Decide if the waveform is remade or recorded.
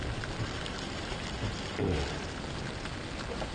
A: recorded